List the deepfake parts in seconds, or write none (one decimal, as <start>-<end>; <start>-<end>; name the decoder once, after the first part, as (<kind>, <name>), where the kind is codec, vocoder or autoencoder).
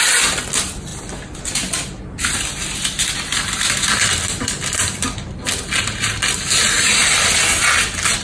none